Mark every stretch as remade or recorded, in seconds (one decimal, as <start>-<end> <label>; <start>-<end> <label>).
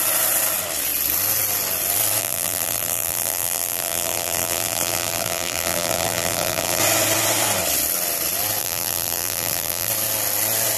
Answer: 0.0-2.2 recorded; 2.2-6.8 remade; 6.8-8.6 recorded; 8.6-9.9 remade; 9.9-10.8 recorded